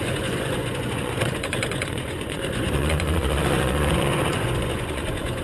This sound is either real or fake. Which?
fake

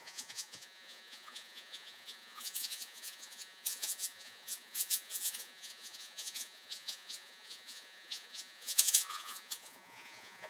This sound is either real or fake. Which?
fake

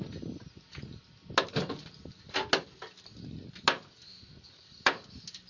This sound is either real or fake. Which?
real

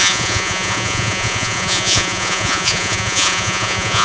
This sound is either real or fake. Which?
fake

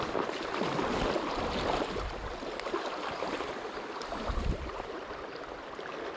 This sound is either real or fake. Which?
real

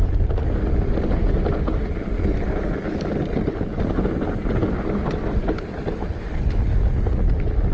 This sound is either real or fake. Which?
real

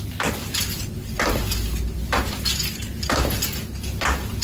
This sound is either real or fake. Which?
real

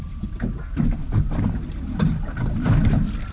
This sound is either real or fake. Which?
real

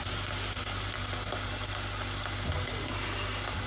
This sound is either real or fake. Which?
real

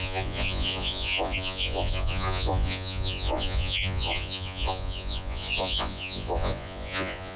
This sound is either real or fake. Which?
fake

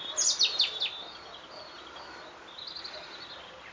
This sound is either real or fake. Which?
real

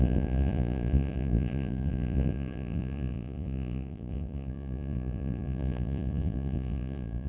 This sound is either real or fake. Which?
fake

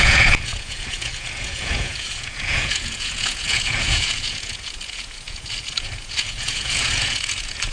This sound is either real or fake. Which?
fake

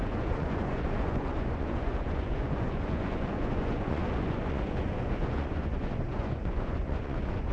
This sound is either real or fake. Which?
fake